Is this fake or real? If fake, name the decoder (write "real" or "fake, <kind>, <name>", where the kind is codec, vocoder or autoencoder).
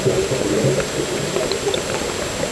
real